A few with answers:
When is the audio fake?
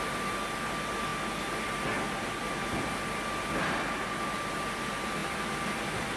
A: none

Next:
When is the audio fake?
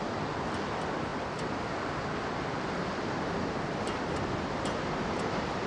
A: 1.1-4.5 (vocoder, BigVGAN v2)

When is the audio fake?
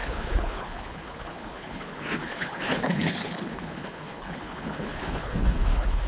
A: 0.0-6.1 (codec, HILCodec)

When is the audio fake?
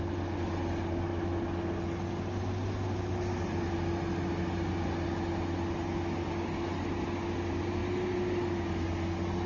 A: none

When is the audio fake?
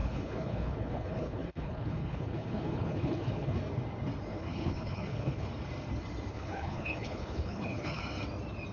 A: 0.0-3.6 (codec, HILCodec); 4.3-5.5; 6.3-8.0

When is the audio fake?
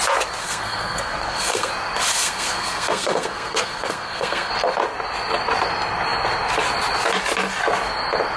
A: 0.4-1.7 (codec, SNAC); 2.1-4.5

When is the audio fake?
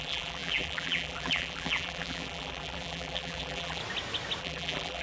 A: 0.0-3.8 (vocoder, BigVGAN v2); 4.4-5.0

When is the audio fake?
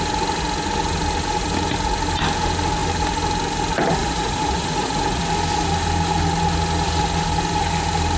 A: 4.0-5.2 (vocoder, Vocos)